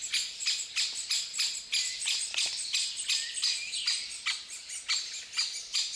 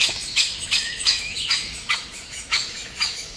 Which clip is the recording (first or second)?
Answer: first